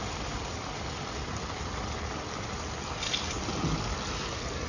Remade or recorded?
recorded